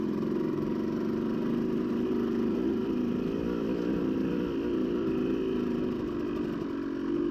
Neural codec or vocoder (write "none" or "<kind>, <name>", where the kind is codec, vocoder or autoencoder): none